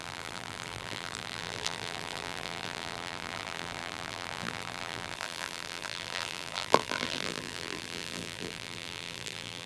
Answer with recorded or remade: remade